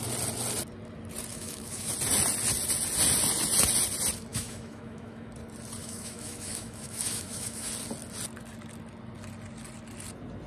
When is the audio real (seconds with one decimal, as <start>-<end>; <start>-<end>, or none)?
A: 0.0-1.3; 1.9-4.3; 5.3-5.8; 7.7-10.5